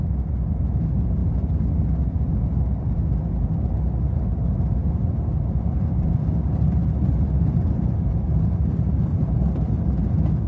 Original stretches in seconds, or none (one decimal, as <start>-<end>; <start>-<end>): 0.0-4.8; 10.1-10.5